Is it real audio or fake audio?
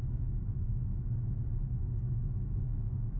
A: fake